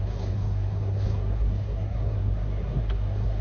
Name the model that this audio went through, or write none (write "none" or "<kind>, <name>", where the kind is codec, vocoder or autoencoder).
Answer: codec, SNAC